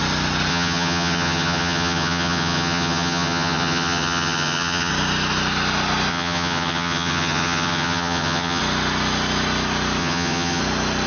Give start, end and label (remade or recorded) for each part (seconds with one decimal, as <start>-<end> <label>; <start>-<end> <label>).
0.0-0.5 recorded; 0.5-4.9 remade; 4.9-6.1 recorded; 6.1-8.6 remade; 8.6-10.0 recorded; 10.0-10.6 remade; 10.6-11.1 recorded